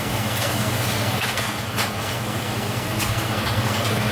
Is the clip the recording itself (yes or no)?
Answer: no